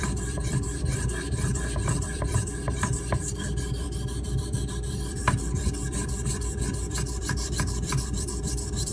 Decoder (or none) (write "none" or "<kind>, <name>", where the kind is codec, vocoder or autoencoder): vocoder, BigVGAN v2